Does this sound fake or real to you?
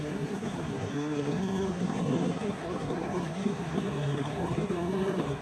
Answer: fake